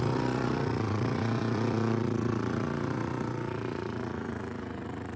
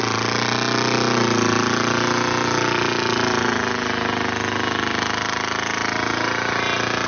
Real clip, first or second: second